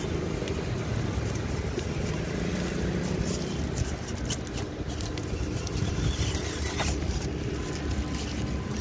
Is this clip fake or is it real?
real